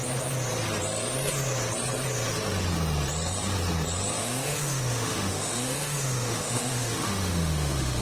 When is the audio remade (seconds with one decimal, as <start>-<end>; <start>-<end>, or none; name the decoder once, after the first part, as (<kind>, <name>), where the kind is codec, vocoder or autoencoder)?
4.2-8.0 (autoencoder, DAC-VAE)